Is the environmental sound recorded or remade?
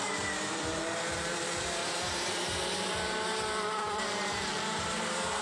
remade